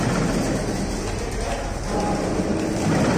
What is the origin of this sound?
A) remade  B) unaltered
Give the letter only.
B